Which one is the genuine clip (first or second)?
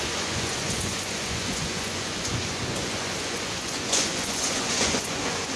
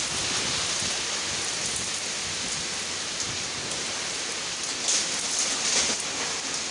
second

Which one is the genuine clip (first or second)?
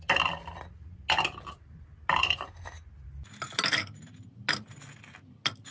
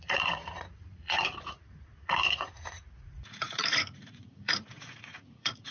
first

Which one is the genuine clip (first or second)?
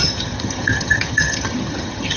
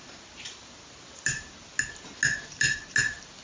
second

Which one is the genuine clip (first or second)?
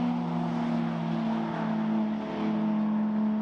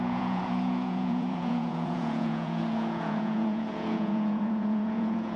first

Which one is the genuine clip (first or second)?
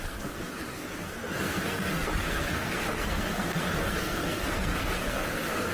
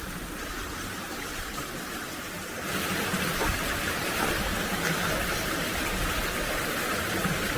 second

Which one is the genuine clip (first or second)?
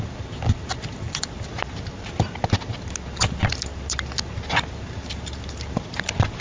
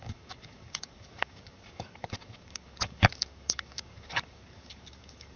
first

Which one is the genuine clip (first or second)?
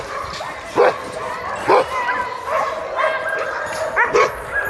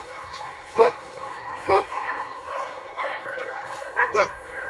first